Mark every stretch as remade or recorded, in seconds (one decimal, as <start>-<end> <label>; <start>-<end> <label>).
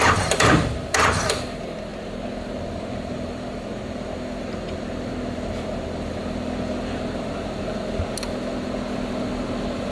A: 0.0-9.9 recorded